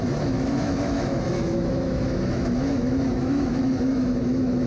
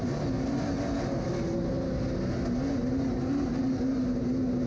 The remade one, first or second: first